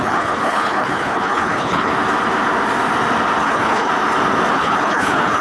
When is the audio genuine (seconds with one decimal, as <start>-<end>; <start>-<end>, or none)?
1.9-3.4; 3.9-4.5